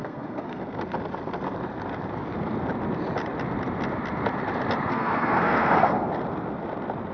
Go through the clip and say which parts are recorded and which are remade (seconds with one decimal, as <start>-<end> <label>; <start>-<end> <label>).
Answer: 0.0-0.6 remade; 0.6-4.9 recorded; 4.9-6.1 remade; 6.1-7.1 recorded